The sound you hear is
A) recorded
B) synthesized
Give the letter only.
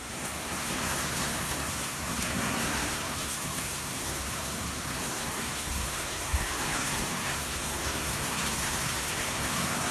B